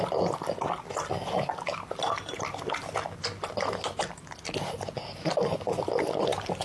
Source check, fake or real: real